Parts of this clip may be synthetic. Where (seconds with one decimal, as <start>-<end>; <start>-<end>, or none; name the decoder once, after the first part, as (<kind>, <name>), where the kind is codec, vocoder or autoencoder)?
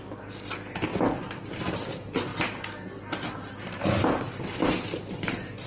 none